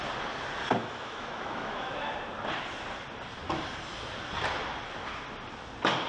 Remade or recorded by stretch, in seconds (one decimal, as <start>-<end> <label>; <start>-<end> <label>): 0.0-0.8 recorded; 0.8-2.1 remade; 2.1-6.1 recorded